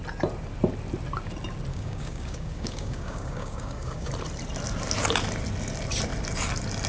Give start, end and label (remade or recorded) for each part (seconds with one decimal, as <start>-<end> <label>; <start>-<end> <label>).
0.0-1.7 recorded; 1.7-4.1 remade; 4.1-6.9 recorded